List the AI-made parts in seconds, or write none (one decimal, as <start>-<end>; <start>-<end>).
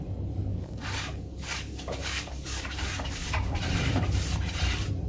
0.5-3.6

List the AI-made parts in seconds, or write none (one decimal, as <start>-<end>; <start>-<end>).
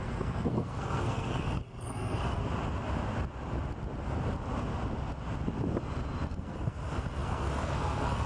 0.0-2.4; 6.3-8.3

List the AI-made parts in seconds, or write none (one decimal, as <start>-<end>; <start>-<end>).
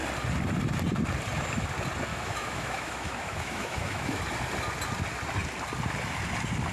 2.1-4.2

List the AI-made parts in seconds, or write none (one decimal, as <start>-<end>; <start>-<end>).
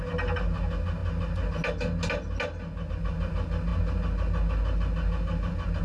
none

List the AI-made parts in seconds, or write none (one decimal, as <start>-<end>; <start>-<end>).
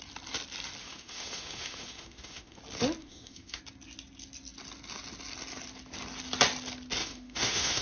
0.8-2.6; 3.0-3.6; 7.0-7.8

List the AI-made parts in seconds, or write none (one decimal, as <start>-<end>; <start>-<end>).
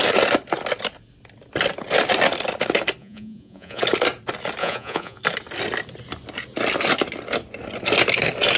3.0-3.8; 4.6-5.2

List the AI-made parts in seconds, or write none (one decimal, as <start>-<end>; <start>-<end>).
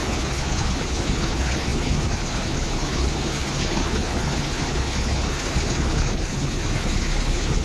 0.0-7.6